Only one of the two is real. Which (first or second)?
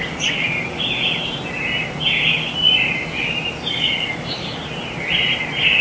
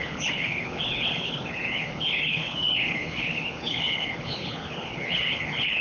first